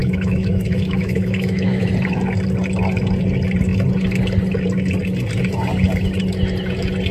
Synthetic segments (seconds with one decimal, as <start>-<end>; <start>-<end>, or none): 0.0-1.9